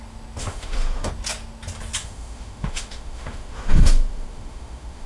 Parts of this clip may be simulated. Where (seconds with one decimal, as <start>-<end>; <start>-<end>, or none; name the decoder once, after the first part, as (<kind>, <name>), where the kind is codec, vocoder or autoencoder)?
0.4-1.1 (autoencoder, DAC-VAE); 2.0-5.1